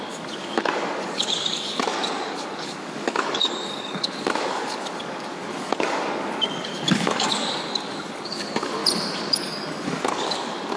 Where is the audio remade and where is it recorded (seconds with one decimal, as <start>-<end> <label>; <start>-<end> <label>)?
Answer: 0.0-8.8 remade; 8.8-9.4 recorded; 9.4-10.8 remade